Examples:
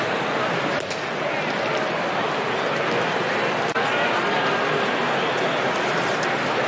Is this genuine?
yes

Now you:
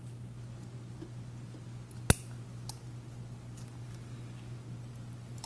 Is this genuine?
yes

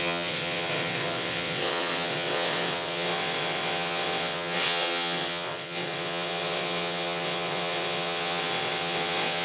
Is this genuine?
no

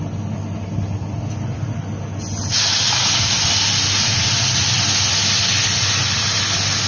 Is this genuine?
yes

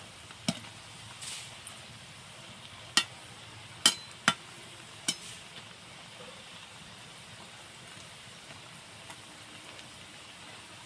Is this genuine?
yes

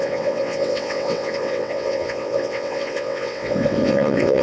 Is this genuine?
no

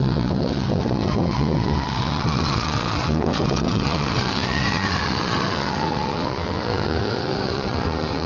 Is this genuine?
no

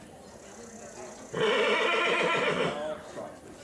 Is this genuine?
yes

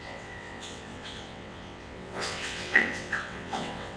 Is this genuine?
no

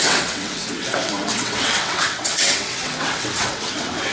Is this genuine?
no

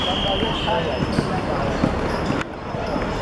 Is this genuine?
yes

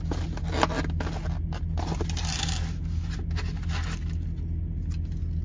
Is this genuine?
yes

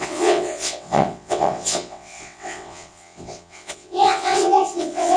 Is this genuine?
no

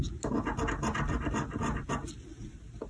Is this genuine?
yes